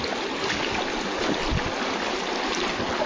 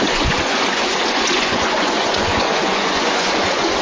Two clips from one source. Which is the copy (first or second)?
second